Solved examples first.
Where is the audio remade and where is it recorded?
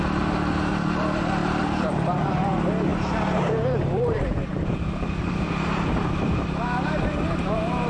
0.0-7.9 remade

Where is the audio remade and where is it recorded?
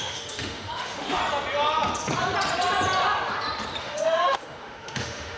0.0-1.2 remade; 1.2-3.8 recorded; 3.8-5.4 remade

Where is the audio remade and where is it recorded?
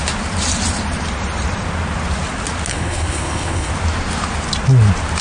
0.0-2.7 recorded; 2.7-3.7 remade; 3.7-5.2 recorded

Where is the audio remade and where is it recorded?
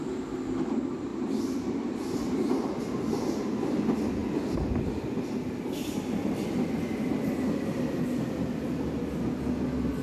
0.0-10.0 recorded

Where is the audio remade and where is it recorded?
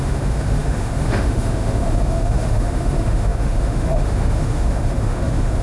0.0-5.6 remade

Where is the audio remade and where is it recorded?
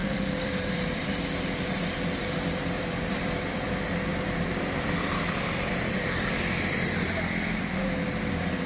0.0-8.7 remade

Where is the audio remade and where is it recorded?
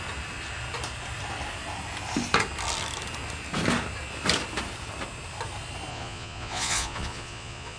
0.0-5.9 recorded; 5.9-7.8 remade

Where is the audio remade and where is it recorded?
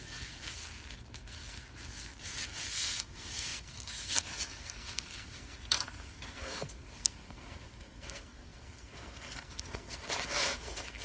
0.0-11.0 remade